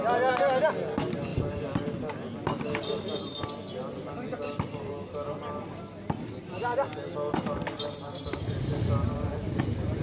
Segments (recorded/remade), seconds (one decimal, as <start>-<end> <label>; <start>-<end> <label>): 0.0-8.7 recorded; 8.7-9.6 remade; 9.6-10.0 recorded